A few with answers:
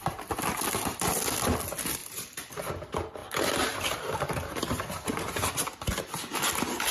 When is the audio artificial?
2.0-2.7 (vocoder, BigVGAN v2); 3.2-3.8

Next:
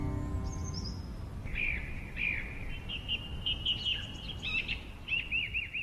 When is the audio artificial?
1.4-4.7 (vocoder, BigVGAN v2)

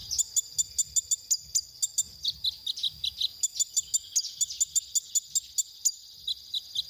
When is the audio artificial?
none

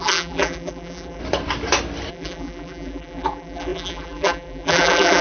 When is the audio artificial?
0.0-1.2 (vocoder, BigVGAN v2); 2.1-5.2